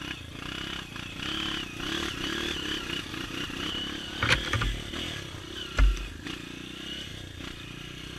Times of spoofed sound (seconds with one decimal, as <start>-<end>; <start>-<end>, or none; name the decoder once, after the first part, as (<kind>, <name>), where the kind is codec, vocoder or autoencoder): 7.1-8.2 (vocoder, BigVGAN v2)